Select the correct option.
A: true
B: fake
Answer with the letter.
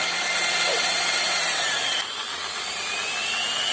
B